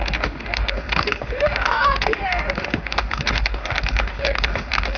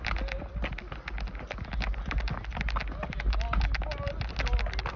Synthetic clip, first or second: first